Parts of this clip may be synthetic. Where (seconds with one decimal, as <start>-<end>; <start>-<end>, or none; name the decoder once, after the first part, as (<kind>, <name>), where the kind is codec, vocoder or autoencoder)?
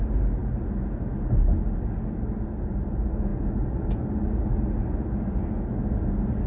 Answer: none